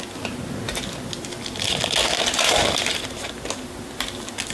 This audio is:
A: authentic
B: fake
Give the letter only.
A